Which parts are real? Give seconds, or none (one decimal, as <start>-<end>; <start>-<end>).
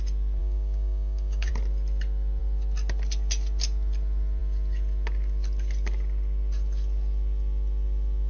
0.0-0.4; 1.5-8.3